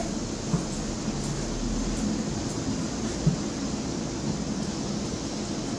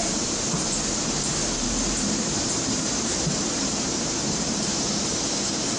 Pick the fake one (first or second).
second